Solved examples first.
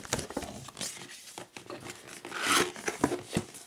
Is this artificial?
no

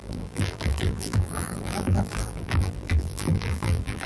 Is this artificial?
yes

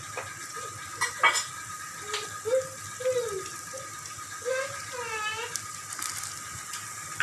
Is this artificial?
no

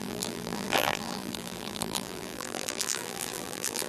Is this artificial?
yes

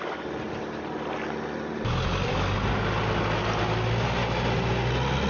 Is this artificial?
no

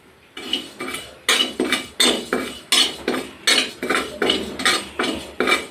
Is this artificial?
no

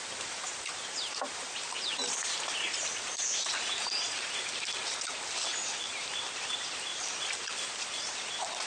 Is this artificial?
yes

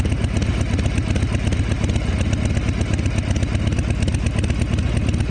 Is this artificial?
no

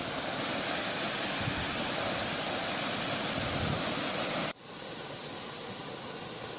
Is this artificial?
no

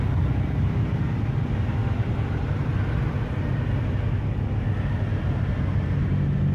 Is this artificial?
no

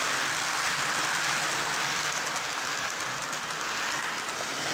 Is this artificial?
no